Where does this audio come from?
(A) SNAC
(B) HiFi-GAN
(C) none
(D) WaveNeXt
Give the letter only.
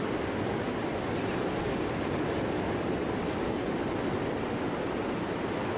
C